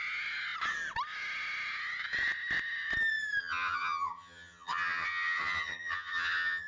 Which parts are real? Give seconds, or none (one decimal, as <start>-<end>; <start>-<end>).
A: 0.0-3.4